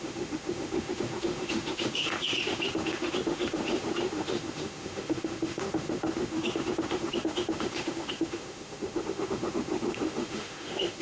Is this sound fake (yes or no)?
yes